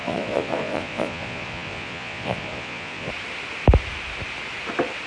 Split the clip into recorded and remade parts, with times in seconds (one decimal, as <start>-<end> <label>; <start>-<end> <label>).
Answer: 0.0-3.1 remade; 3.1-5.1 recorded